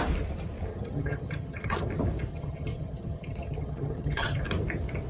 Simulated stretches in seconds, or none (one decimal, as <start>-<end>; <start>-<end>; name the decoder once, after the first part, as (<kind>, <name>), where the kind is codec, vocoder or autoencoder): 0.7-1.9 (vocoder, HiFi-GAN); 2.3-4.4

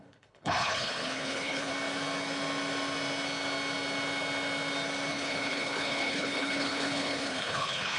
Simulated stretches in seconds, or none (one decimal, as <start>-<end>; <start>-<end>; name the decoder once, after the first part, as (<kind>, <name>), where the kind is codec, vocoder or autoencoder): 0.0-1.7 (codec, HILCodec); 5.1-8.0

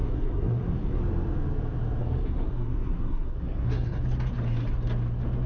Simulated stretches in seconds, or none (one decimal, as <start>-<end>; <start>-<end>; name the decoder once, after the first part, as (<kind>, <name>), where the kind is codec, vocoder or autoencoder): 0.0-1.0 (codec, SNAC); 2.0-4.0

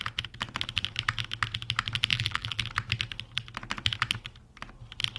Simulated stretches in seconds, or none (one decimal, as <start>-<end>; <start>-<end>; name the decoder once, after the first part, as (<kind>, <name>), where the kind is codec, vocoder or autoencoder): 2.1-2.6 (vocoder, BigVGAN v2)

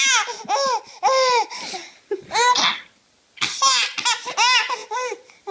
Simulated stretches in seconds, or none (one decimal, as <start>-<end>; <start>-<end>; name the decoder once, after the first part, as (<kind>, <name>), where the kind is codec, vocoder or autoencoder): 4.8-5.5 (vocoder, BigVGAN v2)